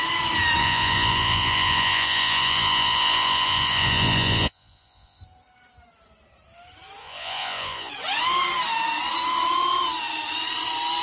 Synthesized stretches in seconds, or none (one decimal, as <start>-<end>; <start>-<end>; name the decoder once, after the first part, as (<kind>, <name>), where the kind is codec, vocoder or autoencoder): 0.6-5.2 (vocoder, Vocos); 7.0-7.9